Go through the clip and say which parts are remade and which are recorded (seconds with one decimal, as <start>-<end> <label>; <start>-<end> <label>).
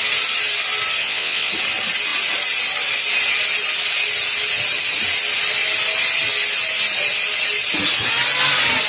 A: 0.0-1.0 recorded; 1.0-1.5 remade; 1.5-8.9 recorded